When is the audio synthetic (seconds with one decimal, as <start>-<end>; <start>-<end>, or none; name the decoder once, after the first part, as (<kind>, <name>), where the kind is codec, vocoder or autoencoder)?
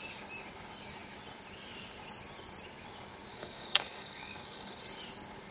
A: 3.3-4.7 (codec, DAC)